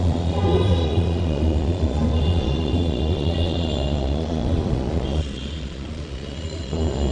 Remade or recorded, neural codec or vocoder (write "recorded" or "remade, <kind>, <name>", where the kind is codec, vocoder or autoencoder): remade, vocoder, Vocos